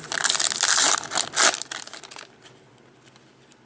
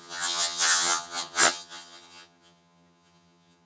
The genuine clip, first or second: first